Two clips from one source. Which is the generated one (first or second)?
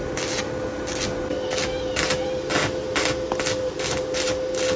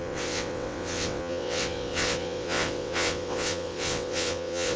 second